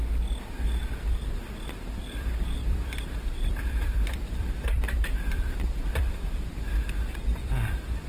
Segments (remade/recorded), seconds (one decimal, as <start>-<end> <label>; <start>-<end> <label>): 0.0-2.6 recorded; 2.6-6.7 remade; 6.7-7.4 recorded; 7.4-8.1 remade